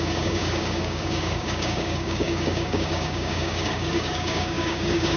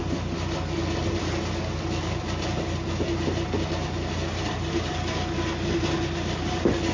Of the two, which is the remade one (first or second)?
first